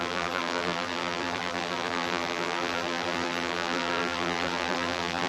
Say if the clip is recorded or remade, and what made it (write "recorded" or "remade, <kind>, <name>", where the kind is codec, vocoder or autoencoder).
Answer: remade, vocoder, BigVGAN v2